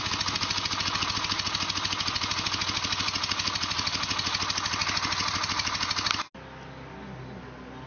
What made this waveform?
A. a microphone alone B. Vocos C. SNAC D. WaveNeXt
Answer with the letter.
A